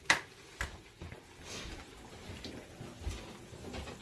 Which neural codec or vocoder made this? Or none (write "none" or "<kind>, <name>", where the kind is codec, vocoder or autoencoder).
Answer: none